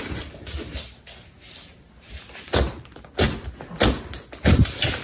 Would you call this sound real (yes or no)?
yes